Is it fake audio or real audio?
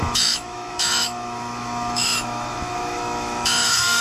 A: fake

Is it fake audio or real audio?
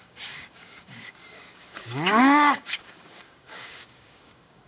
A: fake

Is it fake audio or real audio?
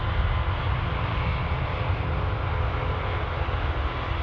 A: real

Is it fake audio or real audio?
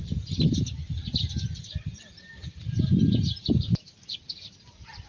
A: real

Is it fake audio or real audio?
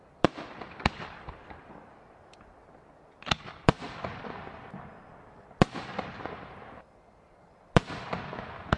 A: fake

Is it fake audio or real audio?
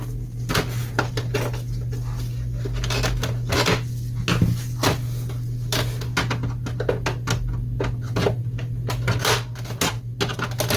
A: real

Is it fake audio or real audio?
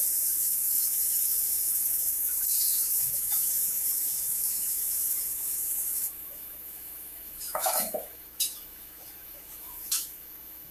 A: fake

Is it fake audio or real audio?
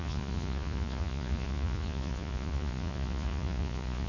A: fake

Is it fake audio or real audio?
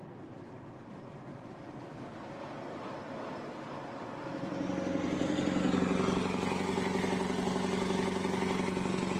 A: real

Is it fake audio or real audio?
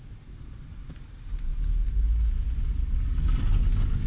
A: real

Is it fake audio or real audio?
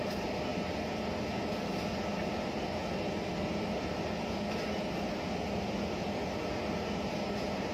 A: real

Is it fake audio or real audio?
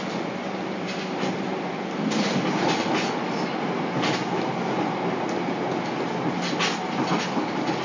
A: real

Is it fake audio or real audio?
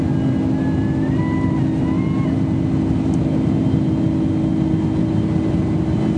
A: real